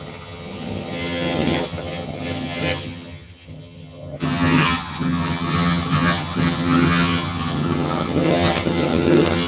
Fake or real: fake